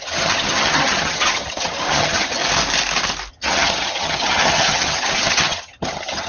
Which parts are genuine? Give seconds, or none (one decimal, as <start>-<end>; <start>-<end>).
2.4-3.3